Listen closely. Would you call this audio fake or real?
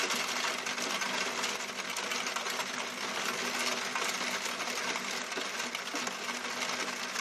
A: real